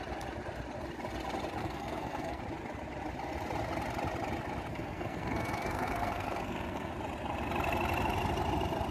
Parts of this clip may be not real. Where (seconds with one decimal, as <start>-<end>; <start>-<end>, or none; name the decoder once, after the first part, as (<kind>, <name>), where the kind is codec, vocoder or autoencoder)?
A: 1.6-2.4 (codec, SNAC); 4.7-6.9